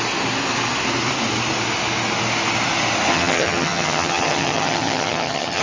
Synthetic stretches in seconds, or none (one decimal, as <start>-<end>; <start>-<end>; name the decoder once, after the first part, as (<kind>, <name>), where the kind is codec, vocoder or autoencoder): 3.1-5.6 (vocoder, HiFi-GAN)